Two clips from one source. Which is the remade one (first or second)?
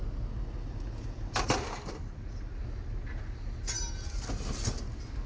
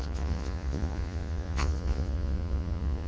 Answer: second